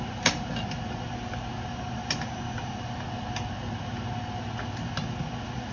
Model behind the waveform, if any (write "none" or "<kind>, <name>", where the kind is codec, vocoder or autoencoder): none